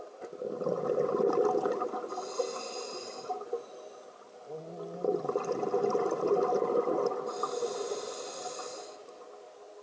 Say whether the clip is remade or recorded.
recorded